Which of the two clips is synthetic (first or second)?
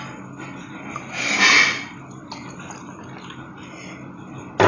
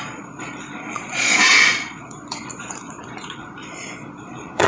second